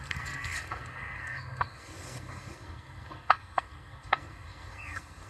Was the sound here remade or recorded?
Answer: remade